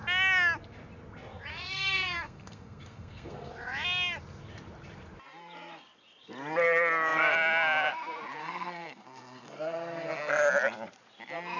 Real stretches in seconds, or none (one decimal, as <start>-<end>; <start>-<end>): 0.0-1.5; 3.5-8.4; 10.3-11.6